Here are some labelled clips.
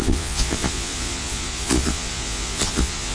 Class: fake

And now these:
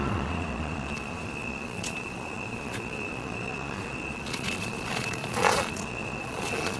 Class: fake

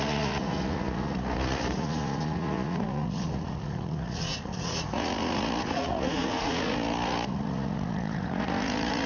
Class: fake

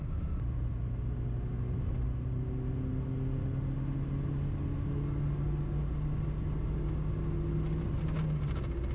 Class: real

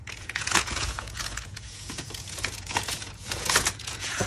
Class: fake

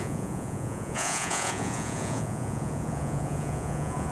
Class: fake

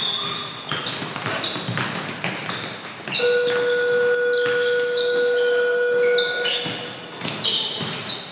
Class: real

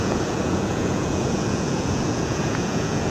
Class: fake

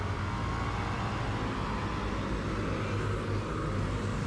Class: real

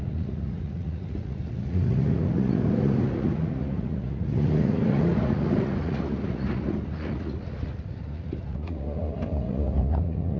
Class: fake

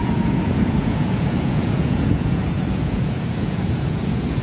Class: fake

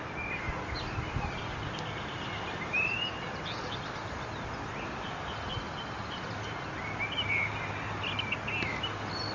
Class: real